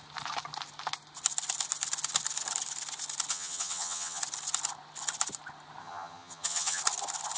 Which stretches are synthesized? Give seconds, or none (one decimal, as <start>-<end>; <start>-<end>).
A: 3.3-4.2; 5.8-6.8